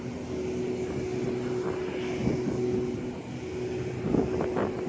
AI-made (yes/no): no